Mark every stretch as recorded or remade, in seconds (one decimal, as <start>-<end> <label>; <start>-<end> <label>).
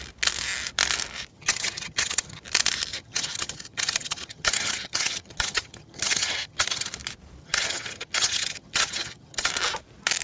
0.0-1.3 recorded; 1.3-2.4 remade; 2.4-2.9 recorded; 2.9-6.9 remade; 6.9-7.4 recorded; 7.4-9.5 remade; 9.5-10.2 recorded